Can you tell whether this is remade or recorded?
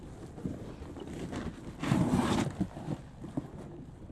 recorded